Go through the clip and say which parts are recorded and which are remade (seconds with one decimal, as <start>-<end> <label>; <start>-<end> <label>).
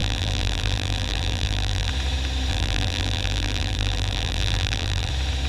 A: 0.0-1.9 remade; 1.9-2.5 recorded; 2.5-5.1 remade; 5.1-5.5 recorded